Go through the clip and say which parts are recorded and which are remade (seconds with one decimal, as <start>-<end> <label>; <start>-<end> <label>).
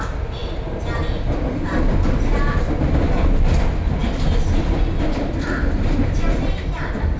0.0-7.2 recorded